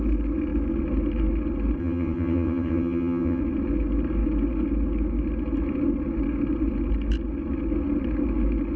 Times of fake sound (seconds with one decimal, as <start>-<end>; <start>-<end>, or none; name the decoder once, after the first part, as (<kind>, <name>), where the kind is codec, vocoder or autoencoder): 1.8-3.4 (vocoder, HiFi-GAN)